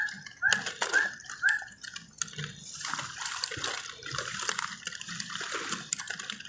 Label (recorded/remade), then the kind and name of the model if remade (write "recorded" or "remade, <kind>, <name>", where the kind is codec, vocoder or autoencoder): recorded